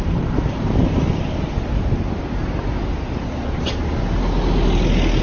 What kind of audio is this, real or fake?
real